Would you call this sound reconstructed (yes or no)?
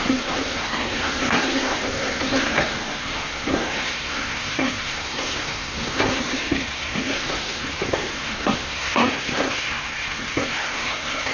yes